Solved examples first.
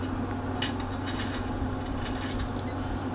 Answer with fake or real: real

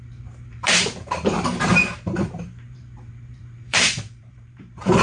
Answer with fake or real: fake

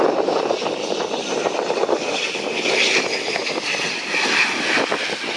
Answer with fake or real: real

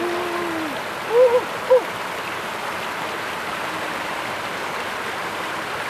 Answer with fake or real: fake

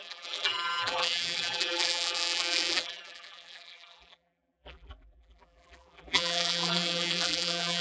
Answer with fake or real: fake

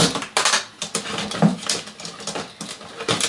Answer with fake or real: real